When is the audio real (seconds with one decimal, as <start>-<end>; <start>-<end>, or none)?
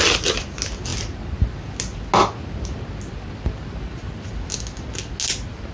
0.0-5.7